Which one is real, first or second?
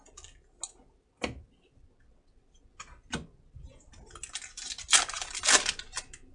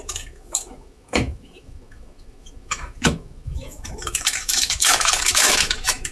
first